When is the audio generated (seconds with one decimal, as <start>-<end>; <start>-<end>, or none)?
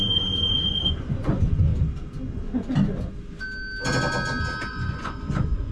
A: 0.0-1.7; 4.7-5.7